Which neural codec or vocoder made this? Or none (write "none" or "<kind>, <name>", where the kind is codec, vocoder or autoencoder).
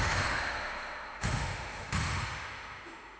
autoencoder, DAC-VAE